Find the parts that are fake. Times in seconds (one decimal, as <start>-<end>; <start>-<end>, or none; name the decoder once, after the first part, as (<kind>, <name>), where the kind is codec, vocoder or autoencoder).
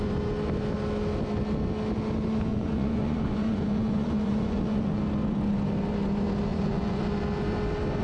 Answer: 2.5-5.0 (vocoder, Vocos); 6.5-7.0